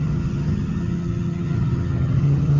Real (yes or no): no